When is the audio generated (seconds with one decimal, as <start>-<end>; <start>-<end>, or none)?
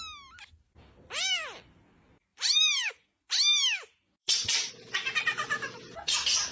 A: 2.3-2.9; 4.2-4.7